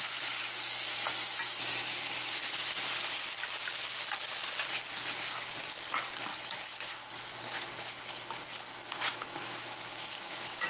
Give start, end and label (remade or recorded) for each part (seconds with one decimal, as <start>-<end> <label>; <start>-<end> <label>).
0.0-6.3 recorded; 6.3-6.9 remade; 6.9-9.1 recorded; 9.1-10.7 remade